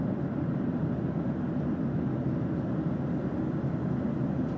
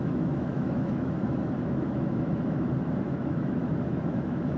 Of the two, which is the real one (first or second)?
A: first